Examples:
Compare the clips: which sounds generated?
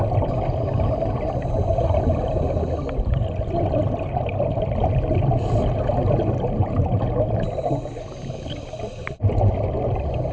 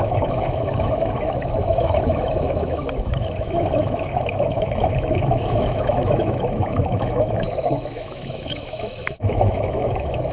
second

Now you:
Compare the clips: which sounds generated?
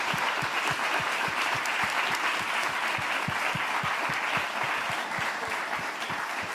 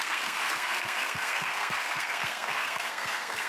second